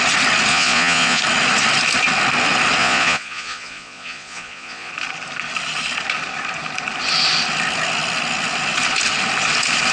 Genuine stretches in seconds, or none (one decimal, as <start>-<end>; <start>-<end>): 0.0-0.5; 1.2-2.8; 4.9-9.9